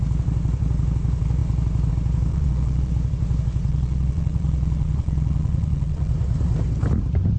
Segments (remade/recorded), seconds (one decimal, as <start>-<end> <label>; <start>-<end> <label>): 0.0-2.3 recorded; 2.3-2.9 remade; 2.9-3.7 recorded; 3.7-6.1 remade; 6.1-7.4 recorded